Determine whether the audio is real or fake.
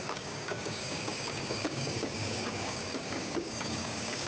fake